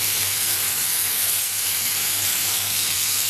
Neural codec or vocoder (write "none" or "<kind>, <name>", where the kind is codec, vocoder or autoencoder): codec, SNAC